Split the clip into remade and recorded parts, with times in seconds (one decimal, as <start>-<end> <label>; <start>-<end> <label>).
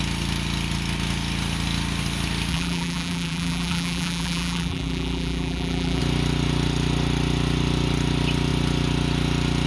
0.0-2.5 recorded; 2.5-6.0 remade; 6.0-9.7 recorded